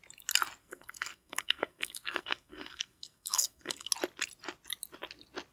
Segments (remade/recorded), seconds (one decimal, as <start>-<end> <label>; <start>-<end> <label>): 0.0-0.6 recorded; 0.6-3.9 remade; 3.9-5.5 recorded